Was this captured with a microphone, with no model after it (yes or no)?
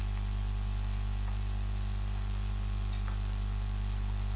yes